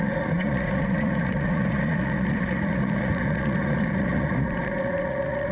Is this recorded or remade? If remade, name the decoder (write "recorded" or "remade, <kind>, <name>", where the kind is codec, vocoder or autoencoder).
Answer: remade, vocoder, Vocos